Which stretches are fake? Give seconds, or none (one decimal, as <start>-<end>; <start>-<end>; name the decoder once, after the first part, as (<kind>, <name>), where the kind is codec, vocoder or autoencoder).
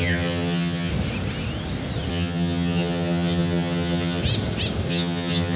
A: 0.0-0.9 (vocoder, HiFi-GAN); 2.1-4.2; 4.9-5.6